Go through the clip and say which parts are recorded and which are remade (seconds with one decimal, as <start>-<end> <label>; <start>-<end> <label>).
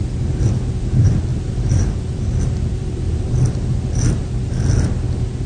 0.0-5.5 recorded